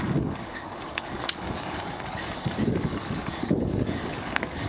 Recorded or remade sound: remade